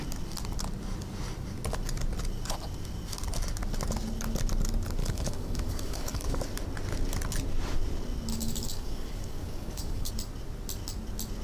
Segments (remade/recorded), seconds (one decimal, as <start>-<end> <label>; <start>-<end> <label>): 0.0-5.0 recorded; 5.0-6.4 remade; 6.4-8.3 recorded; 8.3-10.1 remade; 10.1-11.4 recorded